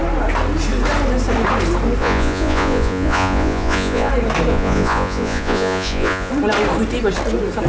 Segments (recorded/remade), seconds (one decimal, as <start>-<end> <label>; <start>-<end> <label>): 0.0-2.0 recorded; 2.0-4.1 remade; 4.1-4.5 recorded; 4.5-6.3 remade; 6.3-7.7 recorded

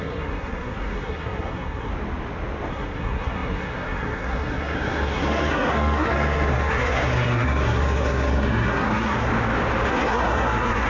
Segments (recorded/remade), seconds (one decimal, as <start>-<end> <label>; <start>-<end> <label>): 0.0-1.9 remade; 1.9-2.7 recorded; 2.7-9.3 remade; 9.3-9.9 recorded; 9.9-10.9 remade

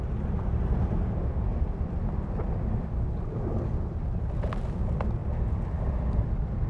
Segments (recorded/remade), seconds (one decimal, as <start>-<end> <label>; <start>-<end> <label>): 0.0-1.5 recorded; 1.5-4.8 remade; 4.8-6.7 recorded

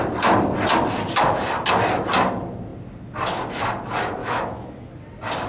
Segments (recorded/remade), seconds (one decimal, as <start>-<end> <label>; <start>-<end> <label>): 0.0-4.2 recorded; 4.2-4.9 remade; 4.9-5.5 recorded